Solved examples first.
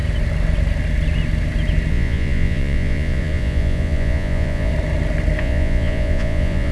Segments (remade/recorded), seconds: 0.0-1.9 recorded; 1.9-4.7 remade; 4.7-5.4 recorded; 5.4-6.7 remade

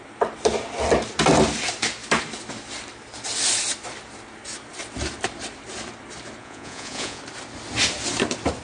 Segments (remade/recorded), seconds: 0.0-6.4 recorded; 6.4-7.2 remade; 7.2-8.6 recorded

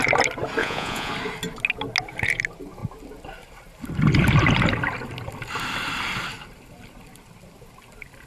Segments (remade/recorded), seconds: 0.0-0.6 recorded; 0.6-1.1 remade; 1.1-8.3 recorded

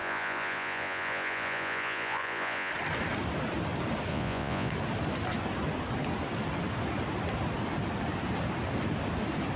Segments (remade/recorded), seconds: 0.0-2.7 remade; 2.7-4.1 recorded; 4.1-4.7 remade; 4.7-9.6 recorded

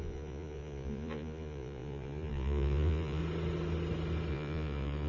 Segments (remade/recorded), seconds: 0.0-3.2 remade; 3.2-4.3 recorded; 4.3-5.1 remade